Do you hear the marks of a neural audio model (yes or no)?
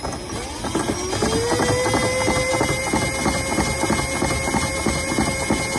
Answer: no